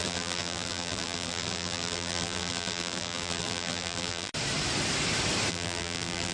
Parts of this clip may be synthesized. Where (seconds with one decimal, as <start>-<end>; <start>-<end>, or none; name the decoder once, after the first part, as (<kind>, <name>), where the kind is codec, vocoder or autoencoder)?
0.0-4.3 (vocoder, BigVGAN v2); 5.5-6.3

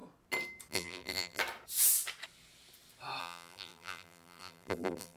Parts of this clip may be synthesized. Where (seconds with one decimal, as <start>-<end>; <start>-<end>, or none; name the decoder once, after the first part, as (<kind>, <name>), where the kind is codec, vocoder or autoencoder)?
0.7-1.4 (vocoder, BigVGAN v2); 3.2-5.2

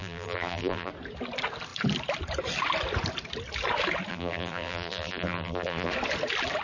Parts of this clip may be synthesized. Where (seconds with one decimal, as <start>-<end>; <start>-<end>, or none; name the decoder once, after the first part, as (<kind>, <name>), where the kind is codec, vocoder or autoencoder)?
0.0-0.9 (vocoder, BigVGAN v2); 4.1-5.9

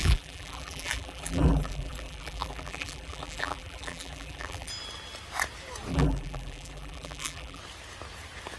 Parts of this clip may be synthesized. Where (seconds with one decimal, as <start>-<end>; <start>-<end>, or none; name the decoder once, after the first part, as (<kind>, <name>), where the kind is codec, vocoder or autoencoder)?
0.0-4.7 (vocoder, BigVGAN v2); 5.9-7.6